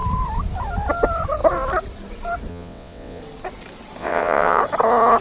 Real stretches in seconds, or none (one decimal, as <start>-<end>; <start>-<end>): 0.0-2.5; 3.2-4.0; 4.6-5.2